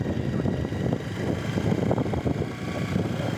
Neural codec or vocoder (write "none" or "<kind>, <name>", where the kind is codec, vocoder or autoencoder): none